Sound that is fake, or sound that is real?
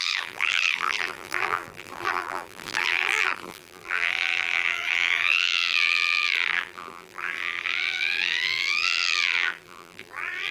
fake